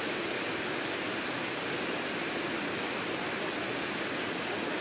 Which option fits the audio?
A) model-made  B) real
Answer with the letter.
A